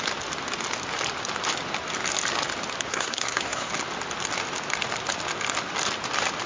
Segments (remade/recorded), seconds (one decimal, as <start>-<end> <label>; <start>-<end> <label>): 0.0-2.9 recorded; 2.9-3.7 remade; 3.7-6.5 recorded